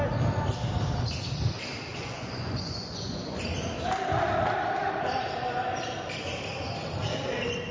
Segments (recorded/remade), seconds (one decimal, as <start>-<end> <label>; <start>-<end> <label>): 0.0-1.9 recorded; 1.9-3.4 remade; 3.4-7.7 recorded